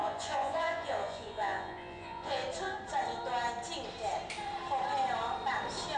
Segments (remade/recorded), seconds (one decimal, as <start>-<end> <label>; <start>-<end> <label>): 0.0-2.4 remade; 2.4-6.0 recorded